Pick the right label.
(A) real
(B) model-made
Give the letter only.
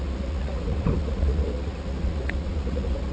B